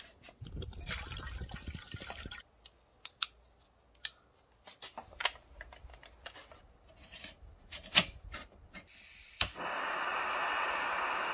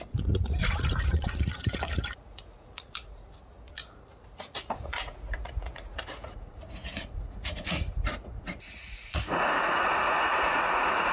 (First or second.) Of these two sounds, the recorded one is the first